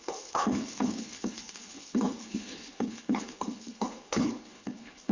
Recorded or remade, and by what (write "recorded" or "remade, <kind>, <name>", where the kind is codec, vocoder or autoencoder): remade, codec, HILCodec